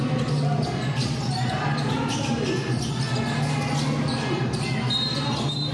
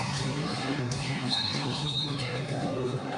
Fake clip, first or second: second